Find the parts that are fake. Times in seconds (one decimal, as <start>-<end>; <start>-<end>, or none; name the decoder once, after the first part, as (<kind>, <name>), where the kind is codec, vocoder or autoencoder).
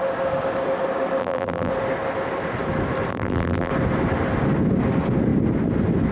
1.2-1.7 (vocoder, BigVGAN v2); 3.1-3.7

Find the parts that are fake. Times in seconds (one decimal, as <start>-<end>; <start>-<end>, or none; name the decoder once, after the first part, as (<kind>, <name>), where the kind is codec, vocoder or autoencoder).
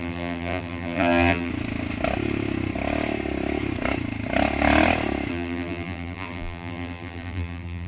0.0-1.5 (vocoder, BigVGAN v2); 5.3-7.9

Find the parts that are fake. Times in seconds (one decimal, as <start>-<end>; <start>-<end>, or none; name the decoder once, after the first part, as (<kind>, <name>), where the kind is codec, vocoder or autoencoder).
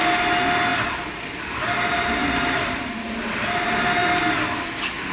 2.2-2.9 (vocoder, BigVGAN v2)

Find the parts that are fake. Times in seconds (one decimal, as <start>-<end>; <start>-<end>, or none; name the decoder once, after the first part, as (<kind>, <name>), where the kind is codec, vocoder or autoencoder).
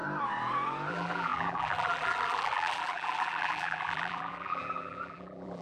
0.9-5.6 (vocoder, BigVGAN v2)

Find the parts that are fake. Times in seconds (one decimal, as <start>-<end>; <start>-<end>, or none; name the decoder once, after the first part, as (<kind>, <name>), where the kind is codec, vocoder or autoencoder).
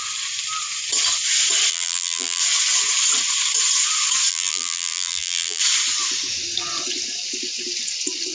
1.7-2.4 (vocoder, BigVGAN v2); 4.3-5.6